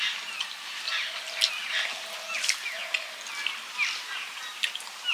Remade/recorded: recorded